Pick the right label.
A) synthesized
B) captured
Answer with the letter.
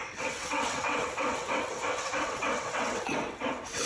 A